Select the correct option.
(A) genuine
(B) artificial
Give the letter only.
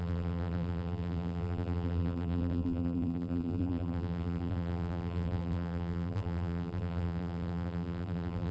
B